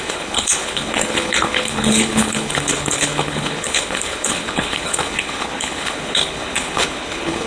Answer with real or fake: fake